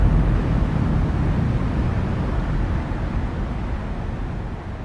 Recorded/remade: recorded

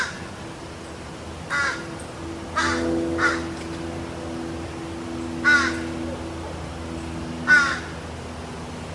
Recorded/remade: recorded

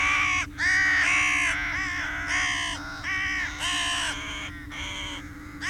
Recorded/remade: recorded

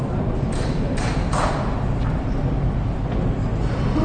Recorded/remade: recorded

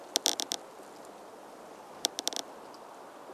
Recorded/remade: recorded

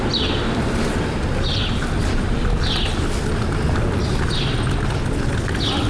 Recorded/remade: recorded